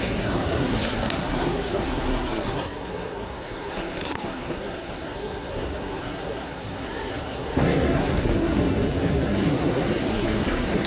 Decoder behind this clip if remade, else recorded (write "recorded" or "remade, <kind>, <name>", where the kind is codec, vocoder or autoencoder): remade, codec, SNAC